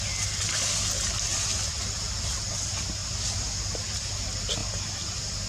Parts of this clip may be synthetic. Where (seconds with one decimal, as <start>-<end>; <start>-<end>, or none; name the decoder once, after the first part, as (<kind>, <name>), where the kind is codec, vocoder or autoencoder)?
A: 3.0-3.8 (vocoder, BigVGAN v2)